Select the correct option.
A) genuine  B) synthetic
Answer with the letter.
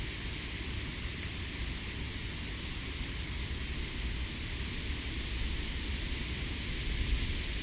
A